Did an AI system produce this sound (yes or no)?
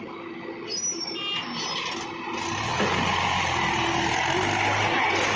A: no